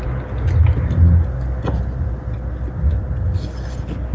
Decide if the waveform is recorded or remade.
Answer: recorded